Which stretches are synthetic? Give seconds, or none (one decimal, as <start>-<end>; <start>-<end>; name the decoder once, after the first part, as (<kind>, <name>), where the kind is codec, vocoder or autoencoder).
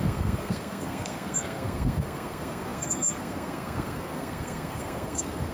0.0-5.5 (codec, SNAC)